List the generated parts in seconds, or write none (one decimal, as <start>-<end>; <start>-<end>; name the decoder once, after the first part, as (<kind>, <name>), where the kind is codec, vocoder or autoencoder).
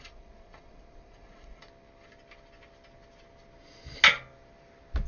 0.0-1.6 (vocoder, Vocos)